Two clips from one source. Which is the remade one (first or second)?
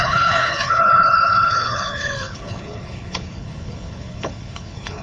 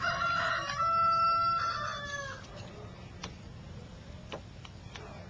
first